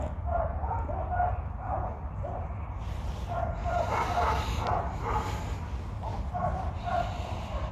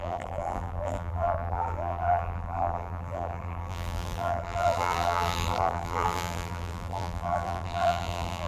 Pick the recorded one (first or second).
first